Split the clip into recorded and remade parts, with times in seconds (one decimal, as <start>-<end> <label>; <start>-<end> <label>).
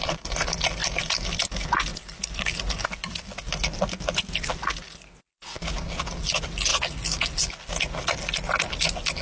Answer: 0.0-9.2 recorded